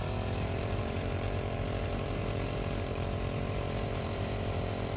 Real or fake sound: fake